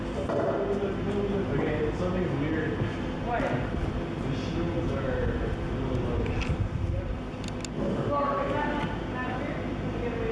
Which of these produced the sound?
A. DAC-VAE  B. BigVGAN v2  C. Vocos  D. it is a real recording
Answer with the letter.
D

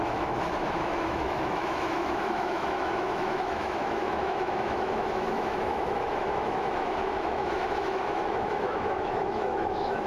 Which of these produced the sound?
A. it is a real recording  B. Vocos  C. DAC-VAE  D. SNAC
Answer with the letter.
C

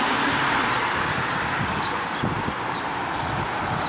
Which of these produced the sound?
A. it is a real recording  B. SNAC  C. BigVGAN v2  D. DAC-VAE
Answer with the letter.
A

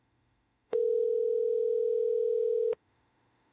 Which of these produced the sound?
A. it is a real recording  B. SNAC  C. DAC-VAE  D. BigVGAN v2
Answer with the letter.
C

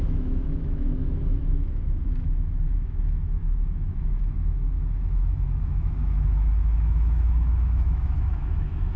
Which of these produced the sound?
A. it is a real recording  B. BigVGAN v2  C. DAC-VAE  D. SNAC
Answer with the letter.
C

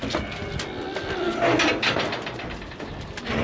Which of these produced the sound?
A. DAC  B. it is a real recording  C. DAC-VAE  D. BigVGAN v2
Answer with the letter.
B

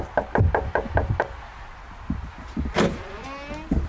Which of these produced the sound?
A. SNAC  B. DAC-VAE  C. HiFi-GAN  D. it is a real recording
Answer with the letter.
D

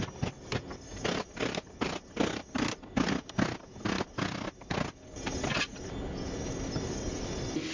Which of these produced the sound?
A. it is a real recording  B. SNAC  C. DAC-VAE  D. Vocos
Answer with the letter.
A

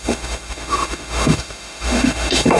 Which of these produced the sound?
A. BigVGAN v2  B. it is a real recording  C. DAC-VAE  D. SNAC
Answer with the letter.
C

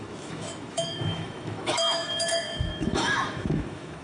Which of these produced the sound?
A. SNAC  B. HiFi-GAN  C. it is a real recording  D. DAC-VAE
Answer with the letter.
D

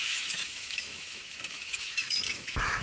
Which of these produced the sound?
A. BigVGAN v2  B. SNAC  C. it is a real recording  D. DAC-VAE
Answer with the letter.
D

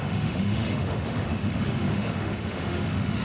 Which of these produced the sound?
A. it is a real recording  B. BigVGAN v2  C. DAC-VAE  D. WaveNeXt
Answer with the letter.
C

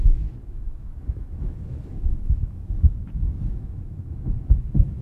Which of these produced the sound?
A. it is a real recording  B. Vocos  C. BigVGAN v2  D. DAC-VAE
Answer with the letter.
D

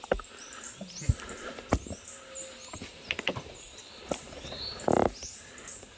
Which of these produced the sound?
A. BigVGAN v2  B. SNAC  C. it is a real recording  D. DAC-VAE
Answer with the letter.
C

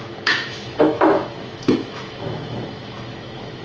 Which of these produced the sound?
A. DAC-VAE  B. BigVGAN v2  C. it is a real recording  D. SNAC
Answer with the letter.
A